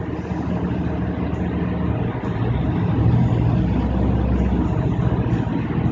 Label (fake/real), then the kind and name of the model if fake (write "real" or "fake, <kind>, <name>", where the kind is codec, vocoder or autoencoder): real